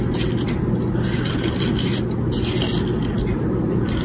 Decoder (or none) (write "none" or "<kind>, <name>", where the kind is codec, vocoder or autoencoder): none